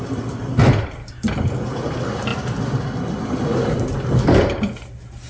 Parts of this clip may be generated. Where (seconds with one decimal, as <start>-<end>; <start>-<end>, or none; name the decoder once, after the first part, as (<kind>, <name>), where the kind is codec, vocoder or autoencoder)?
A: none